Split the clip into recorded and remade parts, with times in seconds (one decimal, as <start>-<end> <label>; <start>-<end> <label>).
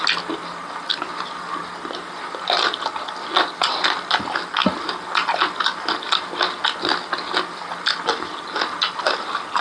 0.0-9.6 recorded